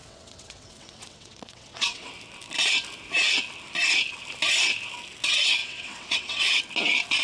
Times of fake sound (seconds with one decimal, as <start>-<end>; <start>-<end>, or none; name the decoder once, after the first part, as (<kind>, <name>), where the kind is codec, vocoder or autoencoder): 0.0-2.1 (vocoder, WaveNeXt); 5.6-6.6